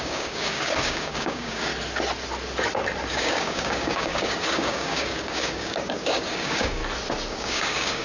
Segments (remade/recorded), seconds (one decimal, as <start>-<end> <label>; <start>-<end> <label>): 0.0-1.7 remade; 1.7-3.1 recorded; 3.1-6.8 remade; 6.8-7.3 recorded; 7.3-8.0 remade